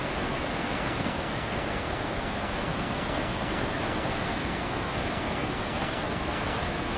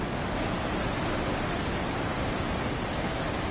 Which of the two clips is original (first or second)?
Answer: second